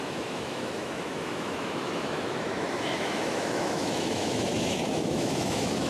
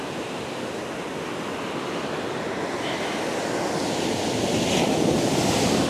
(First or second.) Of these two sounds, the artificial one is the first